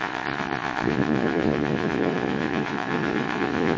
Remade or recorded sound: remade